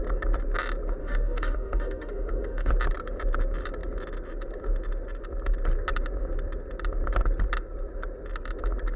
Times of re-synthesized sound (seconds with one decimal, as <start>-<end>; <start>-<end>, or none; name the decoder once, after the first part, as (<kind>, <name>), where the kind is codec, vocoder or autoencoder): 1.0-2.7 (autoencoder, DAC-VAE)